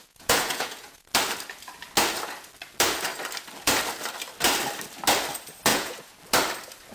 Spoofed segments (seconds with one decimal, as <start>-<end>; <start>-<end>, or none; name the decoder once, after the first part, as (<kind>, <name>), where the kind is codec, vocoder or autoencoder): 0.0-1.1 (vocoder, Vocos); 5.7-6.2